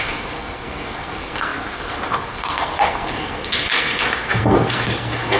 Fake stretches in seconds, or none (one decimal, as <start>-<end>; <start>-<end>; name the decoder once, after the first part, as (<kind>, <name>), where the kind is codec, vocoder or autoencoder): 0.0-5.4 (codec, SNAC)